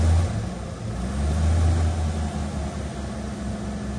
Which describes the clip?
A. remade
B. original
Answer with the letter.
B